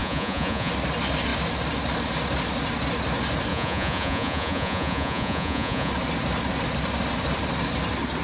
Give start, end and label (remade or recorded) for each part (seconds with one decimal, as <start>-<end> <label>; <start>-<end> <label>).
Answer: 0.0-0.7 remade; 0.7-3.5 recorded; 3.5-5.9 remade; 5.9-8.2 recorded